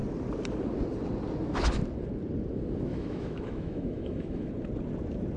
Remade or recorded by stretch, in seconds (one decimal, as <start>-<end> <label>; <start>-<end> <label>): 0.0-2.9 recorded; 2.9-4.5 remade; 4.5-5.4 recorded